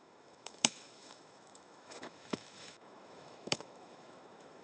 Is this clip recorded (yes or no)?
no